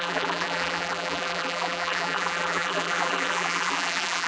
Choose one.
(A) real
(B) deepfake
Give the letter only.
B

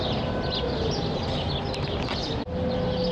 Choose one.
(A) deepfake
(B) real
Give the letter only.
B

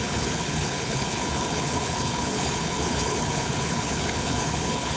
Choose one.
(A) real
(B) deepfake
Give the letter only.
B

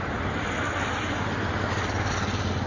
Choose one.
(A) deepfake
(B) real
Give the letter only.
B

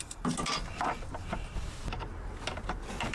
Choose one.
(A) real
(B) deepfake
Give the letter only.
B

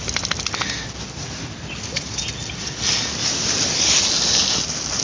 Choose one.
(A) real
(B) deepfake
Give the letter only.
A